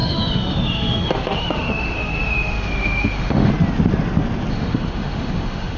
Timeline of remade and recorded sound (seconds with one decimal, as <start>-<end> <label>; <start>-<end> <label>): 0.0-3.5 remade; 3.5-4.5 recorded; 4.5-5.8 remade